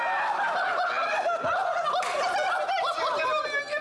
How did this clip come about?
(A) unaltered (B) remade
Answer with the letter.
A